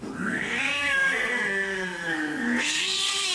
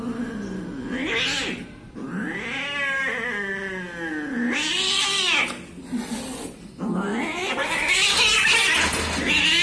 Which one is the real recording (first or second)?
second